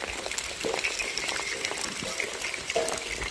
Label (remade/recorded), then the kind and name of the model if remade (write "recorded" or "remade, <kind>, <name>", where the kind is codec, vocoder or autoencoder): recorded